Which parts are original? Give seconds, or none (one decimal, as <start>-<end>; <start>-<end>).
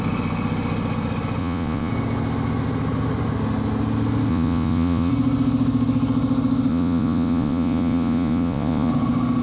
0.0-1.4; 1.9-4.3; 5.1-6.7; 8.9-9.4